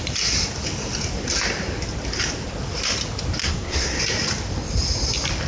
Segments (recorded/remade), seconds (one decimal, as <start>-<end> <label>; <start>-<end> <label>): 0.0-3.4 recorded; 3.4-4.0 remade; 4.0-5.5 recorded